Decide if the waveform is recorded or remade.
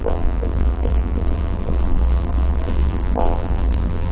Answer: remade